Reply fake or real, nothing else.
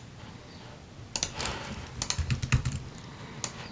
real